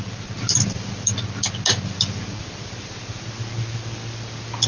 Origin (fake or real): real